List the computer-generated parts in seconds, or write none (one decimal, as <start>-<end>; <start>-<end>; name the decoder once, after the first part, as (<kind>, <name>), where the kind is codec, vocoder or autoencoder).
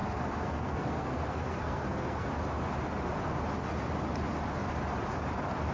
0.0-2.3 (codec, SNAC)